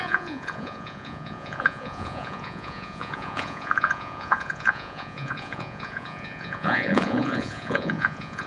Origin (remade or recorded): remade